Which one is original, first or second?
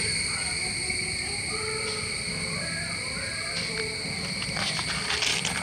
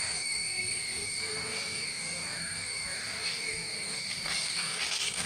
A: first